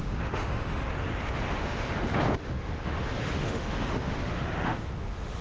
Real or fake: fake